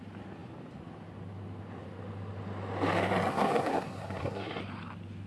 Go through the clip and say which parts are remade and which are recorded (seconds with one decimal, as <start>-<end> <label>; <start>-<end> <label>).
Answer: 0.0-3.3 recorded; 3.3-4.6 remade; 4.6-5.3 recorded